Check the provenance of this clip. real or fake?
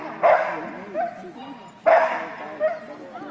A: real